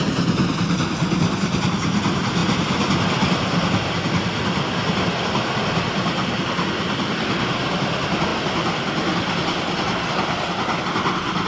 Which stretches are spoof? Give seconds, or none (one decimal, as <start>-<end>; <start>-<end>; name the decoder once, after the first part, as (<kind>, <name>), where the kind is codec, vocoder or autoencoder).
none